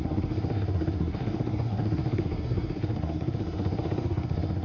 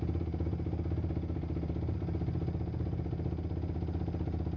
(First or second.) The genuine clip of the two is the second